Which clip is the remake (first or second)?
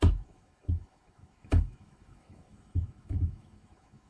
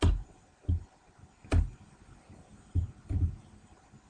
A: first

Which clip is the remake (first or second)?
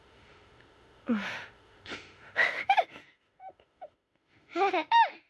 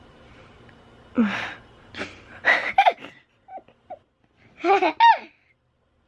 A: first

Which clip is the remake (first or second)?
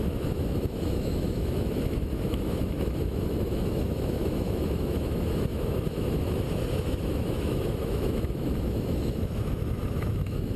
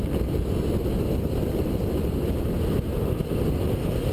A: first